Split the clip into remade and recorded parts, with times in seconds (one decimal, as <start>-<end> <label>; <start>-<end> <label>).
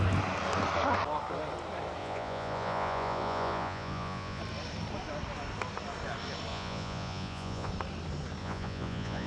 0.0-2.0 recorded; 2.0-4.4 remade; 4.4-6.5 recorded; 6.5-7.7 remade; 7.7-8.4 recorded; 8.4-9.3 remade